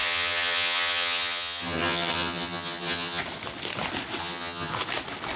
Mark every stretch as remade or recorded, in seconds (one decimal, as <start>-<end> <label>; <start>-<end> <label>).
0.0-3.2 remade; 3.2-4.2 recorded; 4.2-4.7 remade; 4.7-5.4 recorded